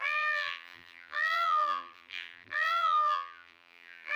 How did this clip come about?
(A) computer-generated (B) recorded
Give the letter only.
A